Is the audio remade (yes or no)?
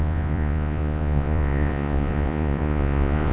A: yes